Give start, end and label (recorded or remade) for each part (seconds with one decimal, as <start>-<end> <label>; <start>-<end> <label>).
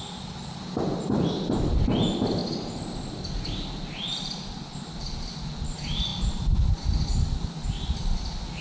0.0-8.6 recorded